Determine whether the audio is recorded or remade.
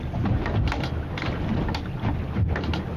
recorded